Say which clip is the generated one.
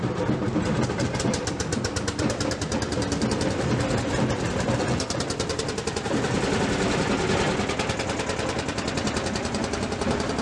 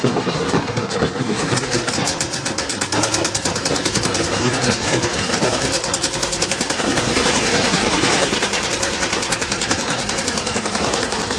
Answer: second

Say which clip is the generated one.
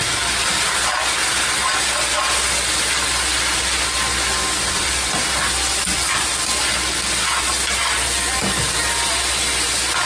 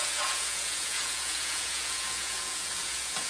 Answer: second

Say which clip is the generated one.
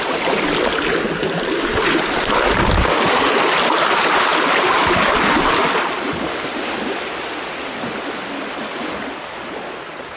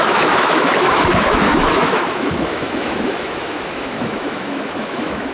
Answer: second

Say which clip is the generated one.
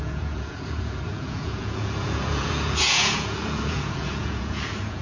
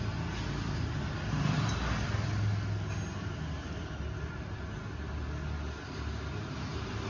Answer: first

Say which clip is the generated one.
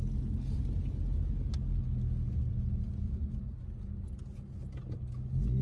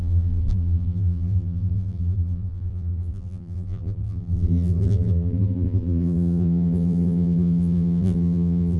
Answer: second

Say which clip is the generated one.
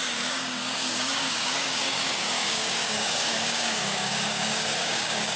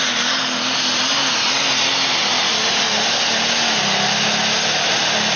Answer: first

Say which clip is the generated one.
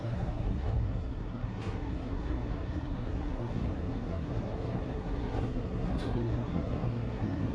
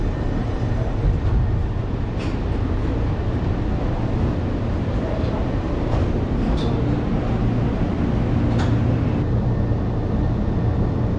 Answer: first